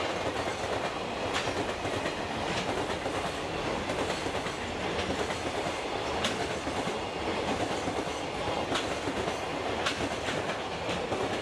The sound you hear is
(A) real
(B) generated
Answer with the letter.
A